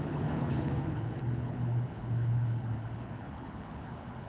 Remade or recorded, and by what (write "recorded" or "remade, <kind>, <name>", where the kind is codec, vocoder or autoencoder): remade, codec, HILCodec